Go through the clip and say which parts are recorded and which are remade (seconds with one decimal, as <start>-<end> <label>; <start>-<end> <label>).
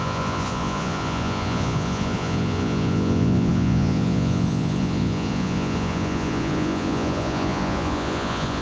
0.0-8.6 remade